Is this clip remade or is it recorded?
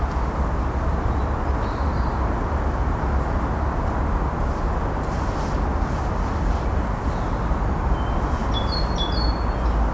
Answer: recorded